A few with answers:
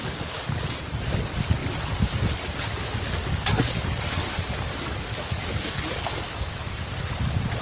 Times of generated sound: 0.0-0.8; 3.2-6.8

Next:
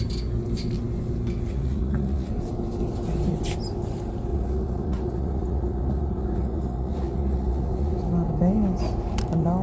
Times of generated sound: 1.5-2.3; 4.3-8.1

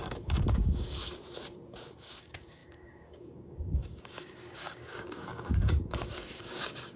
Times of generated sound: 0.0-1.0; 2.0-7.0

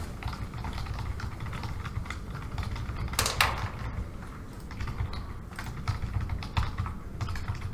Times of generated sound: none

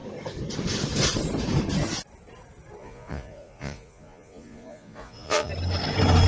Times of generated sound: 2.8-5.5

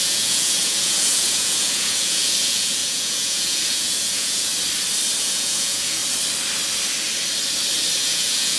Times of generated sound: 0.0-4.5; 5.2-6.0; 8.0-8.6